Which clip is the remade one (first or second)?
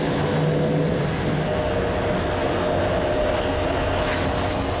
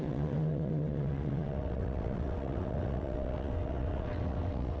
second